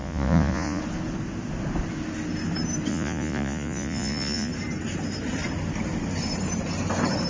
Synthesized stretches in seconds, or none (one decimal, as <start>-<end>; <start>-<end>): 0.0-0.8; 2.9-4.5